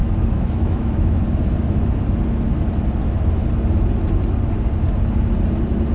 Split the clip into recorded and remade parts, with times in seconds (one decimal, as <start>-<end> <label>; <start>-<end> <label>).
0.0-1.2 remade; 1.2-5.9 recorded

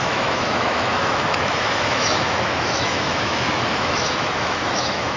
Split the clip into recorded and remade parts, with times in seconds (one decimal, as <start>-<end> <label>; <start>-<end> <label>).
0.0-5.2 remade